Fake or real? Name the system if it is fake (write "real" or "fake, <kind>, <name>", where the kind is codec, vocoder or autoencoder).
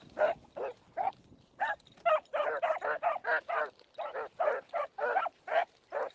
real